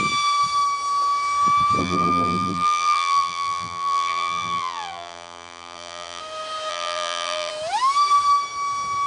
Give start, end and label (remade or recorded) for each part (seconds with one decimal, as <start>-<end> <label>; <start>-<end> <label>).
0.0-1.8 recorded; 1.8-6.2 remade; 6.2-6.7 recorded; 6.7-7.5 remade; 7.5-9.1 recorded